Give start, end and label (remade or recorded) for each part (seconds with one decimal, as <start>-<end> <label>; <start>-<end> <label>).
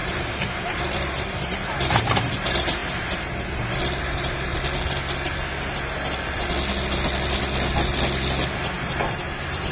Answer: 0.0-2.8 remade; 2.8-4.0 recorded; 4.0-4.5 remade; 4.5-9.7 recorded